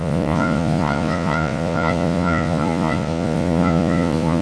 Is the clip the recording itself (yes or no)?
no